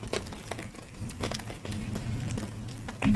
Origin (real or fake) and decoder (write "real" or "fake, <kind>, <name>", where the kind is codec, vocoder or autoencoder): real